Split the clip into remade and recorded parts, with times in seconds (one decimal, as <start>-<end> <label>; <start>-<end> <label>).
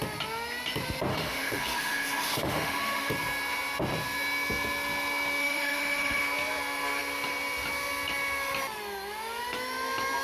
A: 0.0-1.1 recorded; 1.1-3.1 remade; 3.1-5.4 recorded; 5.4-6.2 remade; 6.2-10.2 recorded